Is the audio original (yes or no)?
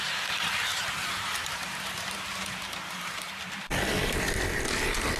no